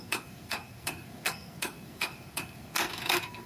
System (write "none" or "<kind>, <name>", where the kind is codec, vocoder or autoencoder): codec, SNAC